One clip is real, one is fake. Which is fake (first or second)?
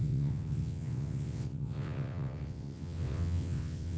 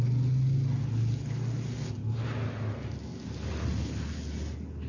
first